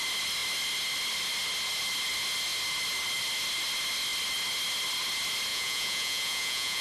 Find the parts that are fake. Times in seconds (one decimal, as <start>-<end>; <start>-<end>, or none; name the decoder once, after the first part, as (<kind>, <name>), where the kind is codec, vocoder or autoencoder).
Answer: 5.5-6.8 (vocoder, Vocos)